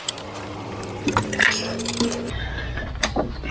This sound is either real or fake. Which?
real